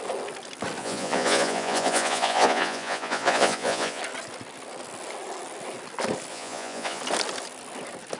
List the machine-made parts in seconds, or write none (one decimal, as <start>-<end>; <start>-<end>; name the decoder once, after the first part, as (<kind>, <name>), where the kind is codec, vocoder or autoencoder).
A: 0.8-4.0 (vocoder, Vocos); 6.3-7.0